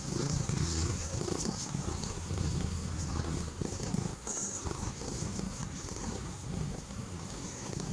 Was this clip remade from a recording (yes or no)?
yes